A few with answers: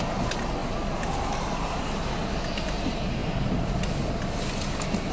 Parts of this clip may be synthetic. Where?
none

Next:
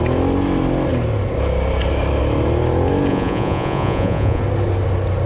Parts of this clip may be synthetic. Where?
3.1-4.4 (vocoder, Vocos)

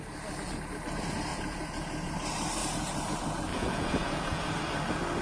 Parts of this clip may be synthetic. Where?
1.3-2.1 (vocoder, Vocos); 2.6-3.1; 3.5-4.6

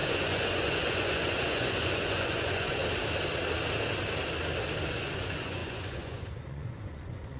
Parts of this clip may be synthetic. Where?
0.0-2.8 (vocoder, Vocos); 4.9-7.4

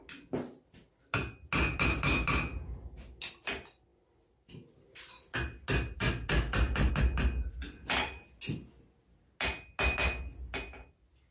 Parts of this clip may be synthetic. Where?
none

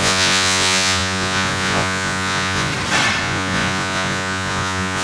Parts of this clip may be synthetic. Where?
0.0-2.7 (vocoder, Vocos); 3.2-5.0